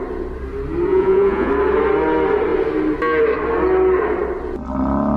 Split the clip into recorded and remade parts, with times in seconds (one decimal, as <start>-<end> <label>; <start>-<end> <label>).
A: 0.0-0.9 recorded; 0.9-1.5 remade; 1.5-5.2 recorded